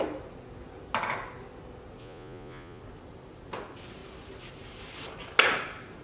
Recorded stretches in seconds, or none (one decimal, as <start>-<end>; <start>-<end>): 0.0-2.0; 2.8-6.0